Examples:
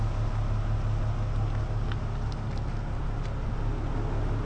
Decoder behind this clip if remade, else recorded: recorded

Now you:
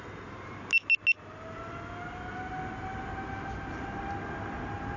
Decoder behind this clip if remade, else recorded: recorded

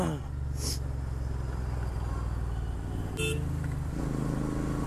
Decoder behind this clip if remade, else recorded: recorded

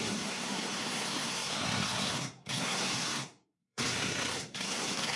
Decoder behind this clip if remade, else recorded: remade, codec, SNAC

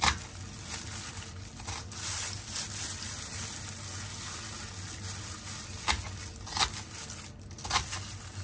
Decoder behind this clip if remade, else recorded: recorded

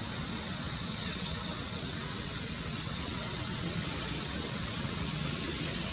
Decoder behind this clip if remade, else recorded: remade, vocoder, WaveNeXt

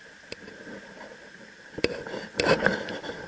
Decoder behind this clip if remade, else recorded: recorded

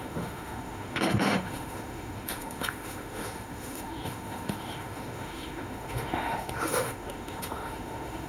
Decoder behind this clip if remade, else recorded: remade, autoencoder, DAC-VAE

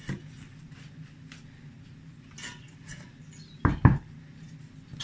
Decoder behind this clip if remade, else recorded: recorded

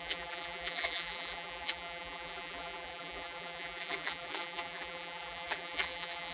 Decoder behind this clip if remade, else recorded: remade, vocoder, BigVGAN v2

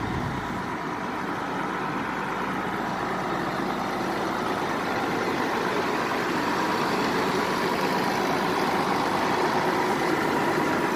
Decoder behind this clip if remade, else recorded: recorded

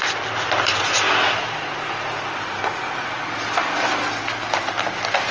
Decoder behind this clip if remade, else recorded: recorded